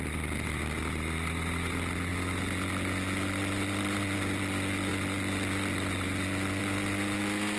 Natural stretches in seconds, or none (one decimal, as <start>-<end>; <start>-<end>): 0.0-7.6